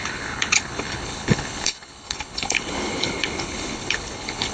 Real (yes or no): no